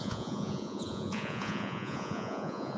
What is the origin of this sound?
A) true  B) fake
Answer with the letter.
B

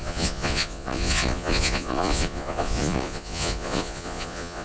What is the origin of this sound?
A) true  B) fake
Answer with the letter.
B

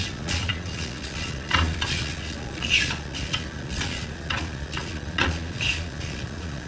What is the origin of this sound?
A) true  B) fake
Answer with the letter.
B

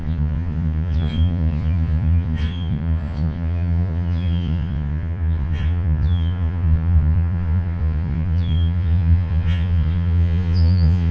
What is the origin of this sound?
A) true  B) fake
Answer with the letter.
B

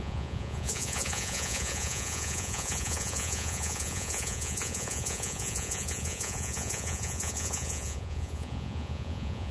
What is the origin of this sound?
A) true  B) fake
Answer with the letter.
B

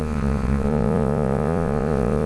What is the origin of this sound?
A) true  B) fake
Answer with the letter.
B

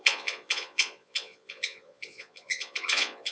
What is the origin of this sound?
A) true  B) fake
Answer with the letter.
B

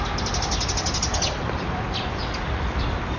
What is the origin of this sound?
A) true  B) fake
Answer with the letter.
A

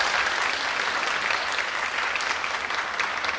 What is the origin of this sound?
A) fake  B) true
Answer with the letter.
B